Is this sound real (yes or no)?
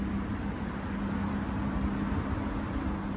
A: yes